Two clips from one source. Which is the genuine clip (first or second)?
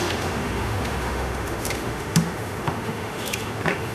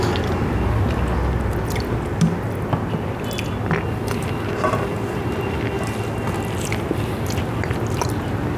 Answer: second